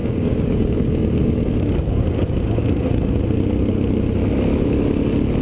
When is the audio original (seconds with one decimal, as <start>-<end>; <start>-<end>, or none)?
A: 3.2-5.4